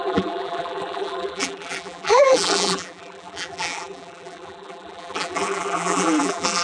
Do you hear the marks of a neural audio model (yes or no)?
yes